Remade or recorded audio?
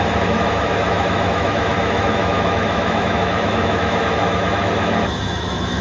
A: remade